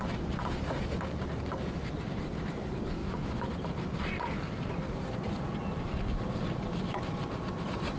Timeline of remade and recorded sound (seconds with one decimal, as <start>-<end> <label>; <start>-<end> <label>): 0.0-3.0 recorded; 3.0-3.5 remade; 3.5-8.0 recorded